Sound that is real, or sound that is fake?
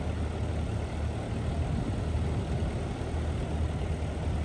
real